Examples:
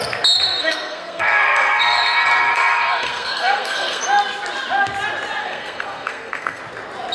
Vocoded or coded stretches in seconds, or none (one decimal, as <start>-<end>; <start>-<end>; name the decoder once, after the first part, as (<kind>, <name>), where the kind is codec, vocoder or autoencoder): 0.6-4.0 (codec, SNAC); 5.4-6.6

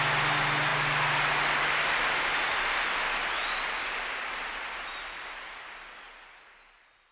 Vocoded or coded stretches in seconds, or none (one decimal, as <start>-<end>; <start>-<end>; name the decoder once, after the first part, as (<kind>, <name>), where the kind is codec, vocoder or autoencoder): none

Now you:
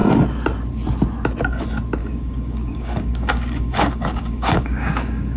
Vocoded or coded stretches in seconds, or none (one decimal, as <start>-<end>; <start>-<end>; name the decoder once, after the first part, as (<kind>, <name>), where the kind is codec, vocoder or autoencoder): 2.0-5.4 (codec, DAC)

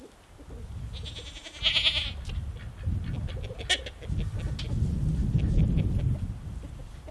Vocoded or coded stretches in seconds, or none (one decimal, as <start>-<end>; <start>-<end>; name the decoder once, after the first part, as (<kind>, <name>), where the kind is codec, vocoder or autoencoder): none